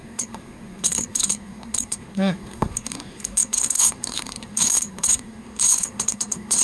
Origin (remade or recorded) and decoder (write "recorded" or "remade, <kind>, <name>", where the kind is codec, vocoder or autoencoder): remade, codec, SNAC